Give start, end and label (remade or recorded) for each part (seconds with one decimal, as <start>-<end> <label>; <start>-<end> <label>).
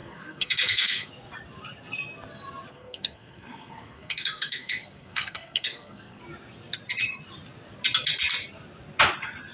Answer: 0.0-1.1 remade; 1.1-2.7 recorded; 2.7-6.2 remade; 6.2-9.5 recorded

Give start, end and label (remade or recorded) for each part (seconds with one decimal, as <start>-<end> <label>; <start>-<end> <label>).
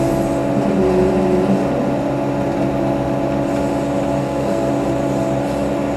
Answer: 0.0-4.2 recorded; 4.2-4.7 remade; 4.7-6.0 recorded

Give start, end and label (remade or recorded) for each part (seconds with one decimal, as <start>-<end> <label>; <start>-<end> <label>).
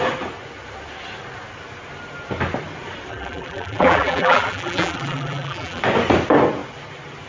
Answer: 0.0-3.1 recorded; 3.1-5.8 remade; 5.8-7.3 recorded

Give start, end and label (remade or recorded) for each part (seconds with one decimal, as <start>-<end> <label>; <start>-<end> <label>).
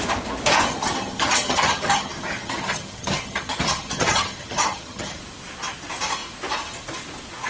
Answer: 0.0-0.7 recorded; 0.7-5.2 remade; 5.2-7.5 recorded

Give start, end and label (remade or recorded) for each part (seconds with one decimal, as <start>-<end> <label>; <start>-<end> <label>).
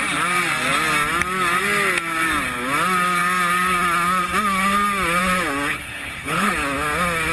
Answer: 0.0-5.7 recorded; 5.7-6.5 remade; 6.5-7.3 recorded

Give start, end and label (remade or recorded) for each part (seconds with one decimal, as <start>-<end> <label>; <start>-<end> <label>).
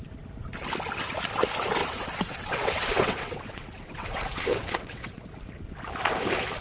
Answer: 0.0-1.8 recorded; 1.8-5.2 remade; 5.2-6.6 recorded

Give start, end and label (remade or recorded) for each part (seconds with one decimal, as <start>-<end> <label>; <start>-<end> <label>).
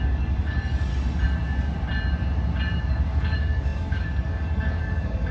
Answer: 0.0-0.9 remade; 0.9-2.8 recorded; 2.8-5.3 remade